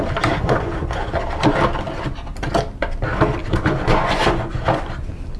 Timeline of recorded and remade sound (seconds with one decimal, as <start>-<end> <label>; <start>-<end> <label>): 0.0-0.4 recorded; 0.4-1.1 remade; 1.1-3.4 recorded; 3.4-4.9 remade; 4.9-5.4 recorded